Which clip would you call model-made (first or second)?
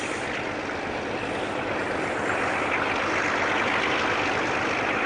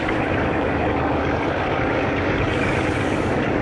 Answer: second